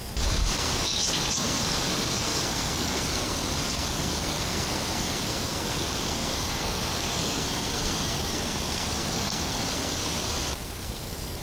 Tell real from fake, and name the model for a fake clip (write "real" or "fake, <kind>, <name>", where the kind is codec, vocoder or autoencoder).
fake, codec, SNAC